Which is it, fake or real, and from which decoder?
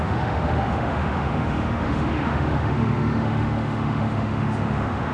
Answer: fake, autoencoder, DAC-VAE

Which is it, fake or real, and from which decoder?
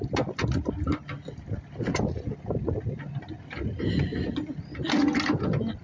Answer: real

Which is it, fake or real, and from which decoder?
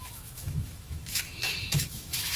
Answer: fake, autoencoder, DAC-VAE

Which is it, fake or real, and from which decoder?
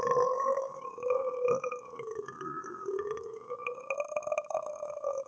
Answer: fake, autoencoder, DAC-VAE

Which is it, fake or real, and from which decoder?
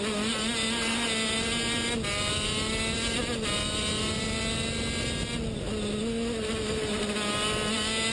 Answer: real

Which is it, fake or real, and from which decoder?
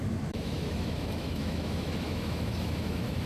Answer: fake, autoencoder, DAC-VAE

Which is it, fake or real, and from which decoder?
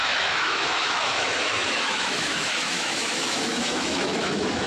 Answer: fake, autoencoder, DAC-VAE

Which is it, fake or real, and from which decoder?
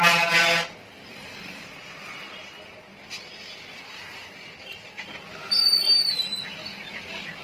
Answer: real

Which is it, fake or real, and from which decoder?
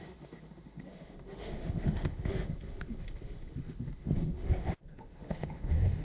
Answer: fake, autoencoder, DAC-VAE